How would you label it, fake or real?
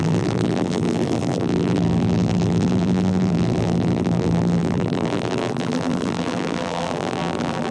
fake